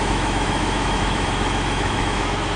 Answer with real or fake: fake